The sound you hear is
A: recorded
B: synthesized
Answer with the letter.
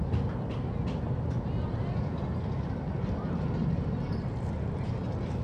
A